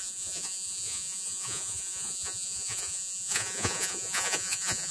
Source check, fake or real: fake